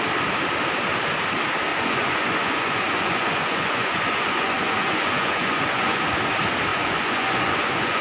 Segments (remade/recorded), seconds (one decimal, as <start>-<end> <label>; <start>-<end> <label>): 0.0-1.7 recorded; 1.7-6.0 remade; 6.0-6.7 recorded; 6.7-8.0 remade